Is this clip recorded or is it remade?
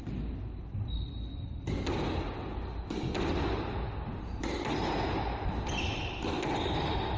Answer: recorded